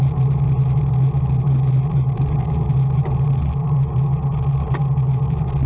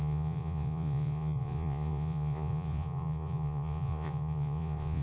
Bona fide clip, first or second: first